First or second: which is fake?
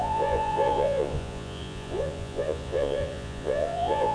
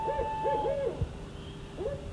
first